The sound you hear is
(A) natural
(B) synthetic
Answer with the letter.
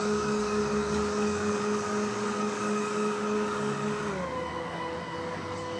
B